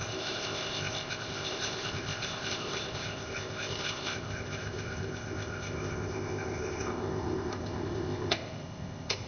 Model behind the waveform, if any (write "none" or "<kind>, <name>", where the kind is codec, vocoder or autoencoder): codec, ZipCodec